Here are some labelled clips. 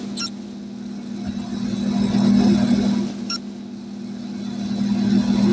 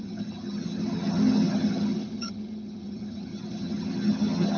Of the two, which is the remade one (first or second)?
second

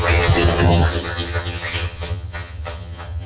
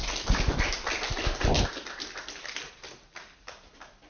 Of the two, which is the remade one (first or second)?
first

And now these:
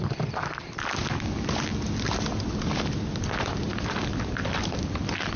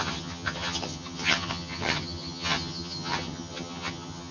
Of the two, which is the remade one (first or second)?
second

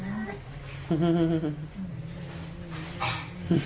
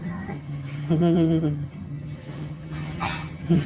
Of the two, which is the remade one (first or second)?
second